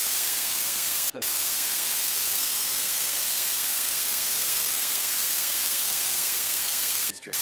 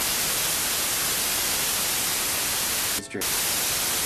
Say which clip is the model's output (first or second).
first